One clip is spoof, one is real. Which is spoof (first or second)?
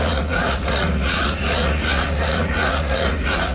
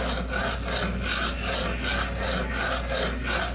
first